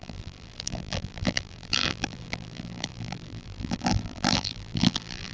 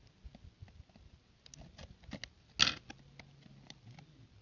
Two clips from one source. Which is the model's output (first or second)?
first